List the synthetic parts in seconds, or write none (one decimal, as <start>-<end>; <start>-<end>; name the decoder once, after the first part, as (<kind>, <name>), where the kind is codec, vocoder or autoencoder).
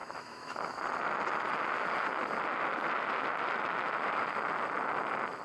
0.0-0.8 (autoencoder, DAC-VAE)